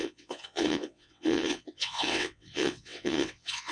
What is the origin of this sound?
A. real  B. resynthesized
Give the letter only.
B